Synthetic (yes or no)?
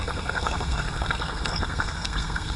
yes